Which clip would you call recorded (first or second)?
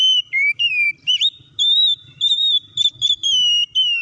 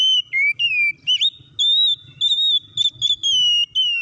second